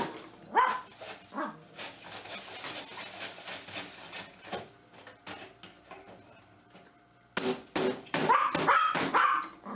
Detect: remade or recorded recorded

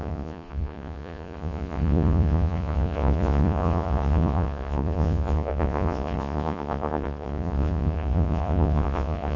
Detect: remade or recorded remade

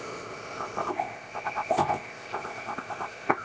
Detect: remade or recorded remade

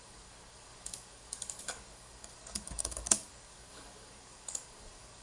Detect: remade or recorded remade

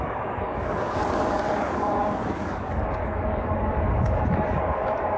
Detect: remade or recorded remade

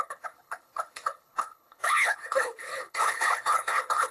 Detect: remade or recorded remade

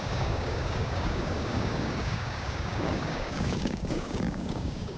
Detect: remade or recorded remade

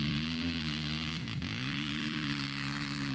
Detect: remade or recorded remade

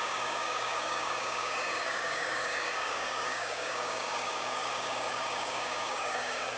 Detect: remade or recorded remade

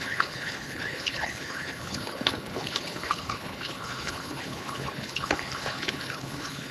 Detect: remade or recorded remade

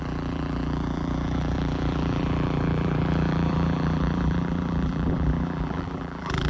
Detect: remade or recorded remade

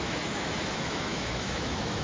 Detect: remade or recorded remade